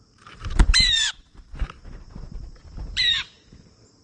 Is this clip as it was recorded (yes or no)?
no